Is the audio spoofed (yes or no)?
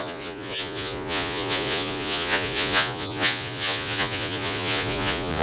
yes